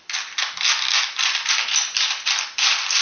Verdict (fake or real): real